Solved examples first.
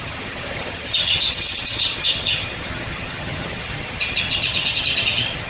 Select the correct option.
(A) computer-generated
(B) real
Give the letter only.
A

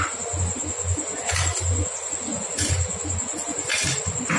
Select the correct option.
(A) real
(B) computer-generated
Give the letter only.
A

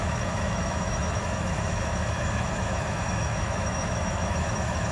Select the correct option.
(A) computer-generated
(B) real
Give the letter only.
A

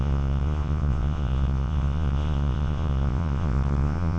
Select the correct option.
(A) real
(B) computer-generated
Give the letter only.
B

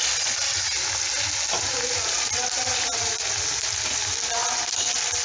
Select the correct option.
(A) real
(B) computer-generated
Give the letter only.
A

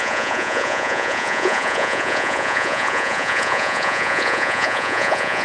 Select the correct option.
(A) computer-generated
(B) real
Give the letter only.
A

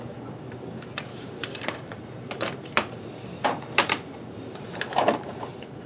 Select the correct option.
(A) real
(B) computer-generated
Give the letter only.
B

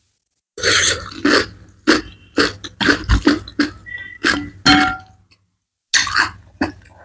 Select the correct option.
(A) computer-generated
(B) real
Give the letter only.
B